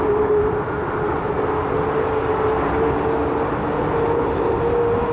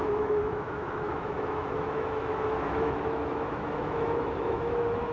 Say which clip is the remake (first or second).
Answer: second